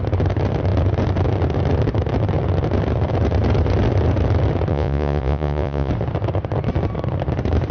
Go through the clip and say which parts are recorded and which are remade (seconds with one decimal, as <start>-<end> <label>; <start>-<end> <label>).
0.0-4.7 recorded; 4.7-5.9 remade; 5.9-7.7 recorded